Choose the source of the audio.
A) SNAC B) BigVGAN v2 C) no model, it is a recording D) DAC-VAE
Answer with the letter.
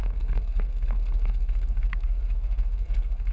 A